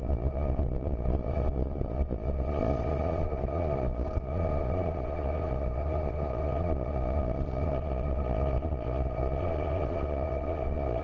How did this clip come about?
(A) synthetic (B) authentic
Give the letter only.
A